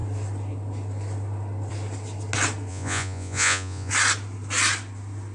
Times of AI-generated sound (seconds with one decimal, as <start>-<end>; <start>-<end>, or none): 2.7-3.9